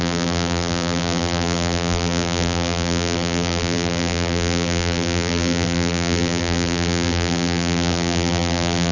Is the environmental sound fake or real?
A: fake